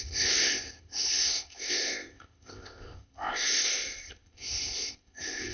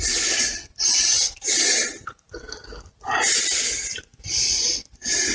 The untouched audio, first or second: second